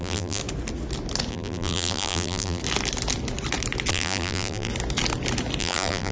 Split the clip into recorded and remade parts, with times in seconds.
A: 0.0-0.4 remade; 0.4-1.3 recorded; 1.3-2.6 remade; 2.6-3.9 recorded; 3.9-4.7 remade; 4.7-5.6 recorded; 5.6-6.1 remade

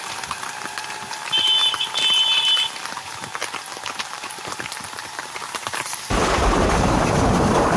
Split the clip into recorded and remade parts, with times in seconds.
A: 0.0-3.4 remade; 3.4-4.0 recorded; 4.0-7.8 remade

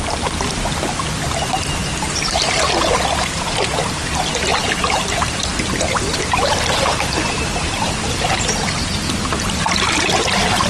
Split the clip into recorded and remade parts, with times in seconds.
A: 0.0-1.8 recorded; 1.8-2.4 remade; 2.4-4.5 recorded; 4.5-8.5 remade; 8.5-10.7 recorded

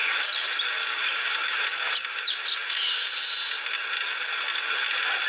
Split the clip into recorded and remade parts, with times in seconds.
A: 0.0-0.5 remade; 0.5-1.4 recorded; 1.4-1.9 remade; 1.9-2.6 recorded; 2.6-3.1 remade; 3.1-5.3 recorded

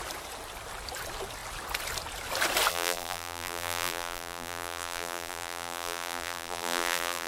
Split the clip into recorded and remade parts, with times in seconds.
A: 0.0-2.7 recorded; 2.7-7.3 remade

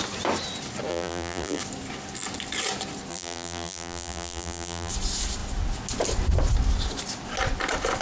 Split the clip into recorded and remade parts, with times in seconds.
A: 0.0-0.9 recorded; 0.9-1.6 remade; 1.6-3.1 recorded; 3.1-4.9 remade; 4.9-8.0 recorded